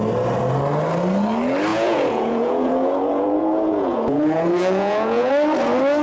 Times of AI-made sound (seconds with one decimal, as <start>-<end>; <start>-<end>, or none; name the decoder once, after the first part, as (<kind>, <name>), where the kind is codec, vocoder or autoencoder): 1.7-5.3 (vocoder, Vocos)